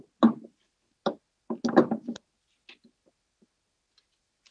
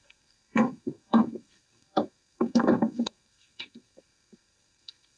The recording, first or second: first